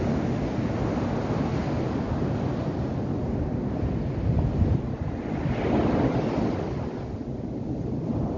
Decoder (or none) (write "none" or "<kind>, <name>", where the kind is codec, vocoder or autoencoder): none